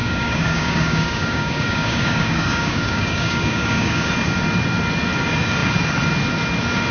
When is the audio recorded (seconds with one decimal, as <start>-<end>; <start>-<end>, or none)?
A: 4.1-6.9